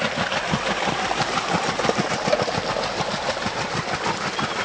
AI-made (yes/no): yes